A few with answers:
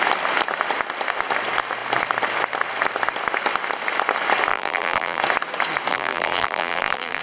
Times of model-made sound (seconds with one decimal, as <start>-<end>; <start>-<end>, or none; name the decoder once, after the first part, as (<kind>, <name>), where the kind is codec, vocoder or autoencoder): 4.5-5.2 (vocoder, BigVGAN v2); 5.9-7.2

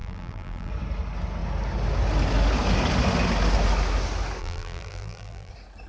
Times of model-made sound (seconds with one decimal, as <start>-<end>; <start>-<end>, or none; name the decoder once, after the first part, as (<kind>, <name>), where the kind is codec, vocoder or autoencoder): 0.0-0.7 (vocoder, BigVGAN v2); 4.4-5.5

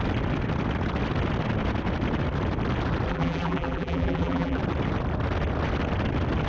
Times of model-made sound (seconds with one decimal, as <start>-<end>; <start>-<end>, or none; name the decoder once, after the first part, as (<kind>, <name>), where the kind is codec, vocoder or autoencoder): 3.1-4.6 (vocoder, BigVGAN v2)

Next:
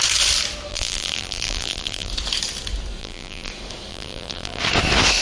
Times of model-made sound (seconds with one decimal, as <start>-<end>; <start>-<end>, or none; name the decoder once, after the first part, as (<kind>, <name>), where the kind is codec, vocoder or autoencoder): 0.7-2.1 (vocoder, BigVGAN v2); 3.0-3.5; 3.9-4.6

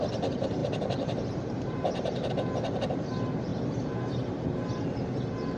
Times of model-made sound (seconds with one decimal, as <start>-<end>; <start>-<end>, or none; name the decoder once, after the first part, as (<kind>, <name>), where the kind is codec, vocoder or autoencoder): 0.6-2.3 (vocoder, BigVGAN v2); 3.5-4.4

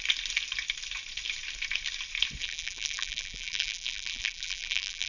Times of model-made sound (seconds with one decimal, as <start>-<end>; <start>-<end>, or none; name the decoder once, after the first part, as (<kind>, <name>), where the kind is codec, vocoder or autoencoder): 2.4-5.1 (vocoder, BigVGAN v2)

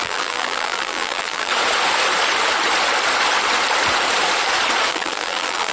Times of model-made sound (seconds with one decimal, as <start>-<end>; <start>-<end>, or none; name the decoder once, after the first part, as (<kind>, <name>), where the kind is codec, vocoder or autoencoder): 0.0-1.5 (vocoder, BigVGAN v2); 4.9-5.7